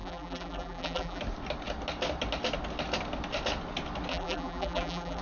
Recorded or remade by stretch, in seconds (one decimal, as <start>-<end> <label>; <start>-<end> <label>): 0.0-1.2 remade; 1.2-4.1 recorded; 4.1-5.2 remade